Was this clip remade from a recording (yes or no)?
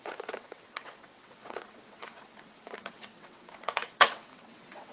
yes